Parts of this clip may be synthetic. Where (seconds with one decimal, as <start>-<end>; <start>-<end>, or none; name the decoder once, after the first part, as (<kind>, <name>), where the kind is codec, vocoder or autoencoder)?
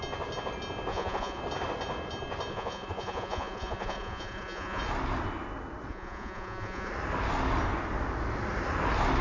0.9-1.4 (vocoder, Vocos); 2.5-4.8; 5.9-6.9